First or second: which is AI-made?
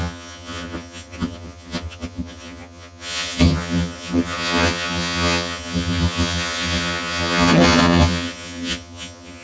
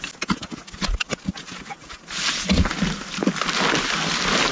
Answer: first